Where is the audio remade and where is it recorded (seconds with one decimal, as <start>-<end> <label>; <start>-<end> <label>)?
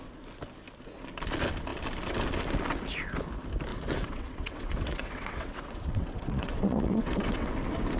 0.0-3.7 recorded; 3.7-7.5 remade; 7.5-8.0 recorded